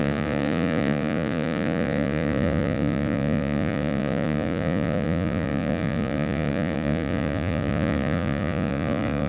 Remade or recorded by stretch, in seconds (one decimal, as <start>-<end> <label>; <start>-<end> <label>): 0.0-9.3 remade